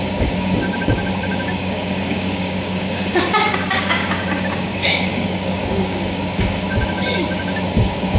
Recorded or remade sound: remade